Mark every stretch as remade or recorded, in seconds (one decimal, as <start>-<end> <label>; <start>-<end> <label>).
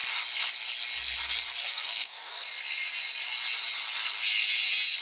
0.0-1.6 recorded; 1.6-2.3 remade; 2.3-5.0 recorded